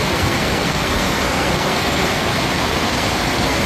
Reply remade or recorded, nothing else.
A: remade